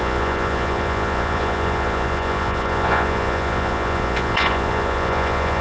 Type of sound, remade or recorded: remade